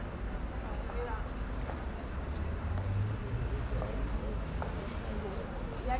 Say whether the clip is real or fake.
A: real